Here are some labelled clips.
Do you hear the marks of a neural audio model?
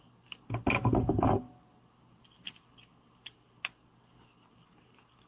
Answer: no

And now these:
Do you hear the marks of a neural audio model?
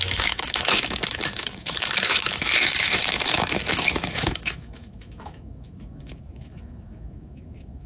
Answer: yes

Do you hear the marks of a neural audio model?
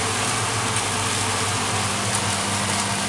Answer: no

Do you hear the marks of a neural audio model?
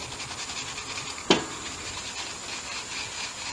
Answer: no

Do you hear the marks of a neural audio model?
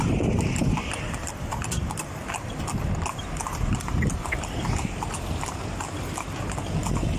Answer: no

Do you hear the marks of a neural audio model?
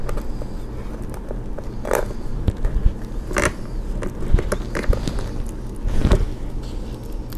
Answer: no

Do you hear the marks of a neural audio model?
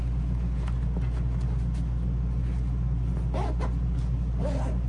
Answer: no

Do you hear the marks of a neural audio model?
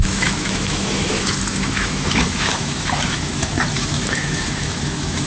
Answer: yes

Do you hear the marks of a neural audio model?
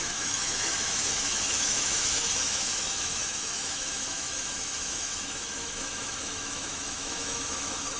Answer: yes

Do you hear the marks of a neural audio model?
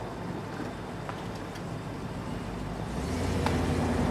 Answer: no